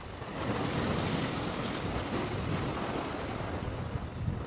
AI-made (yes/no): no